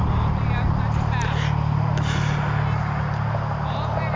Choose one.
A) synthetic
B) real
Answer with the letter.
B